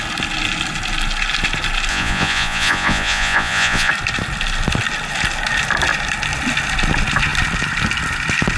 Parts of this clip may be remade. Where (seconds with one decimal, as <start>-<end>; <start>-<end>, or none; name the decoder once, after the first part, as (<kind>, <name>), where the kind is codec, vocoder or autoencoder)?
1.9-3.9 (vocoder, Vocos)